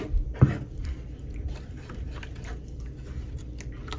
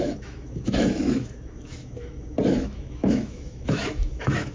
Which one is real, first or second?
first